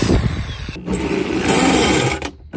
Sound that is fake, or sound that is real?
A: real